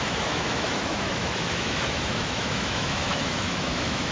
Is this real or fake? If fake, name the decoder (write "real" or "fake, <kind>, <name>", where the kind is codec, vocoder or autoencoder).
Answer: fake, autoencoder, DAC-VAE